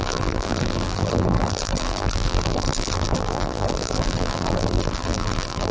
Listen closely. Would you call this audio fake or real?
fake